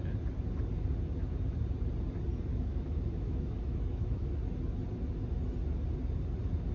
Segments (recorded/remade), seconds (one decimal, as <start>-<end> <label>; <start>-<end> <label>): 0.0-2.5 recorded; 2.5-4.3 remade; 4.3-6.7 recorded